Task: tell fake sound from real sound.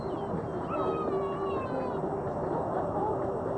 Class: real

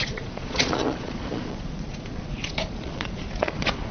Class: fake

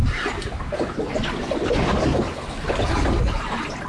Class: real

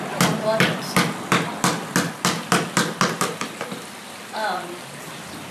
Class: real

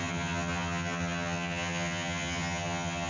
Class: fake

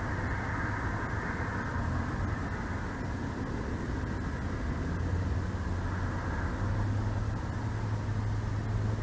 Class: real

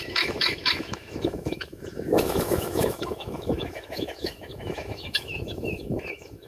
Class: fake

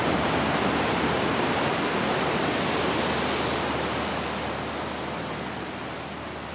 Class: real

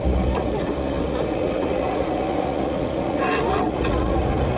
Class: fake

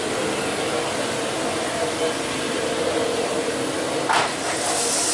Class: real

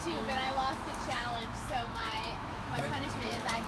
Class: fake